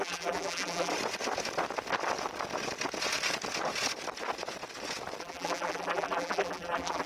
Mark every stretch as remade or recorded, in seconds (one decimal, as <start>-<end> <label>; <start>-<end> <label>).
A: 0.0-0.9 remade; 0.9-5.2 recorded; 5.2-7.1 remade